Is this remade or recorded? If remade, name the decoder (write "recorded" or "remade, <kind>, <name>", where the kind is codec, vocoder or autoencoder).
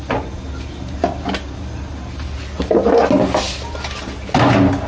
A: recorded